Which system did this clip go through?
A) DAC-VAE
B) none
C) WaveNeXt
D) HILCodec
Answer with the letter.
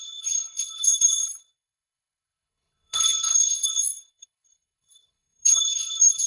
D